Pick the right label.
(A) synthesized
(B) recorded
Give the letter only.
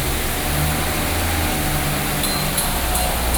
B